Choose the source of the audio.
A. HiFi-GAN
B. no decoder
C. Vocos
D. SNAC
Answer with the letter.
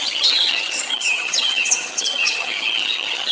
A